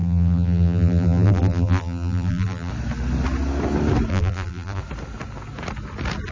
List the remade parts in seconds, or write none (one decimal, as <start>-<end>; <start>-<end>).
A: 0.0-2.7; 4.1-4.8